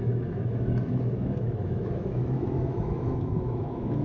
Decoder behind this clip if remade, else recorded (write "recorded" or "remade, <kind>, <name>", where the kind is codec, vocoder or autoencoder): remade, autoencoder, DAC-VAE